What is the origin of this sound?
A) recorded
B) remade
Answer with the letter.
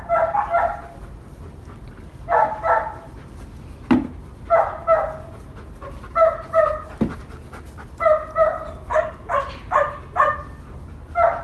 A